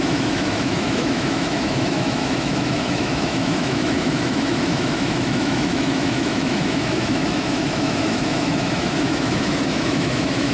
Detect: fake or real fake